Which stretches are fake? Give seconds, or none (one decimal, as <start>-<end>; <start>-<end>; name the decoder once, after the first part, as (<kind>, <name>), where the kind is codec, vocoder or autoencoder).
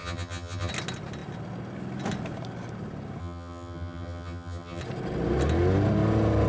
0.0-0.7 (vocoder, HiFi-GAN); 3.2-4.8